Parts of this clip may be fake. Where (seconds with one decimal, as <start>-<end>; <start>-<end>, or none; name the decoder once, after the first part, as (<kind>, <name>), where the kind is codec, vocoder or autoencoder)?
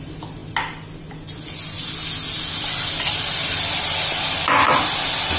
none